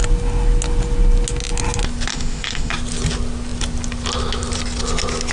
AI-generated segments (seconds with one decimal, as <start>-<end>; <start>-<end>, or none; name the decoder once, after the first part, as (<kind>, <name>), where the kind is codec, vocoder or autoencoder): 2.1-2.7 (autoencoder, DAC-VAE)